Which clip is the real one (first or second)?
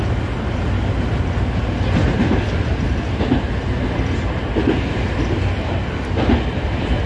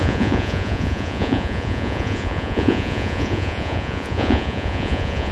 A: first